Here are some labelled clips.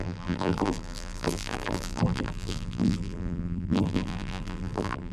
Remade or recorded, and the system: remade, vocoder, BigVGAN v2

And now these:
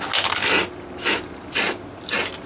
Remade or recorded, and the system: recorded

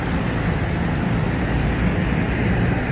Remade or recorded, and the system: remade, vocoder, BigVGAN v2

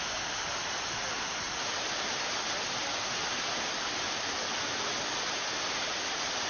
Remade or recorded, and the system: recorded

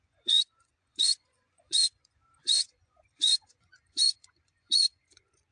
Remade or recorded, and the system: remade, vocoder, Vocos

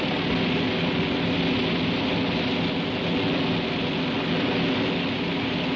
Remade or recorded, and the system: recorded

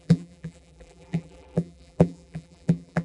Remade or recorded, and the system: remade, vocoder, BigVGAN v2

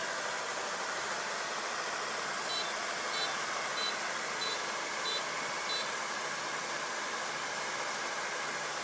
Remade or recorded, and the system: remade, vocoder, BigVGAN v2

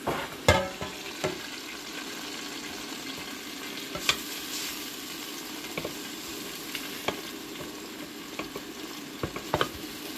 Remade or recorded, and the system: recorded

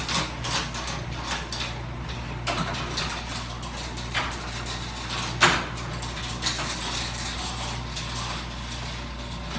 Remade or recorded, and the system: recorded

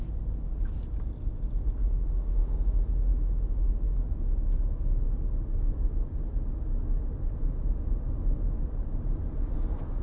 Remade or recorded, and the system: recorded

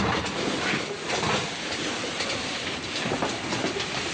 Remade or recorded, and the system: recorded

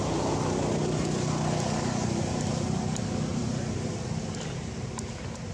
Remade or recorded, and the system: recorded